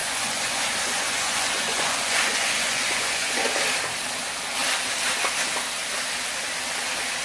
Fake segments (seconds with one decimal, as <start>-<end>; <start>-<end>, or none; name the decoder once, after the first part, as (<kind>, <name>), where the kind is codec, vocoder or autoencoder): 0.0-3.5 (vocoder, Vocos)